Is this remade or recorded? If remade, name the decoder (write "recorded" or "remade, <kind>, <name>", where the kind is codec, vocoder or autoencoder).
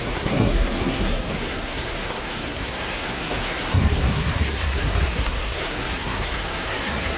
remade, codec, SNAC